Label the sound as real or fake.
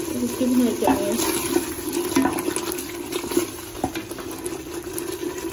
real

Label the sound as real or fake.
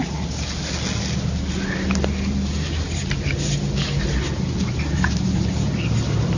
real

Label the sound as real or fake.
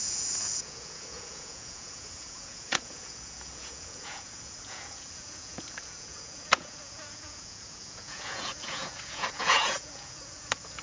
fake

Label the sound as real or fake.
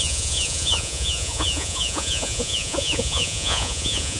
fake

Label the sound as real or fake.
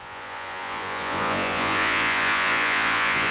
fake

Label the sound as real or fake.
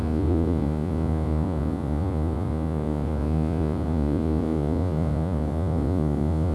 fake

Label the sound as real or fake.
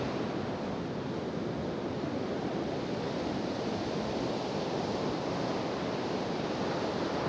real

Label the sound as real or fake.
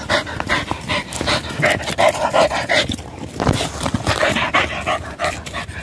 real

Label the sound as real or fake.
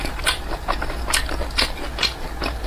real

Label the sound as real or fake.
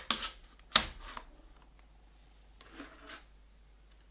real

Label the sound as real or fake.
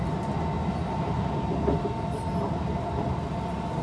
real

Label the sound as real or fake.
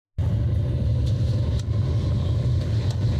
real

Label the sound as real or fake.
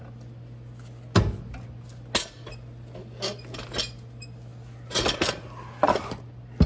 real